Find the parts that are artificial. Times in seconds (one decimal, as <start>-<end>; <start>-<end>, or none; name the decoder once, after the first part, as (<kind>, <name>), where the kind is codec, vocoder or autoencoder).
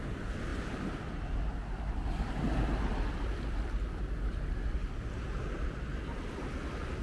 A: none